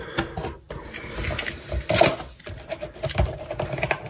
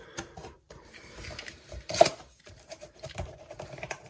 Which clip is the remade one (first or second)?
second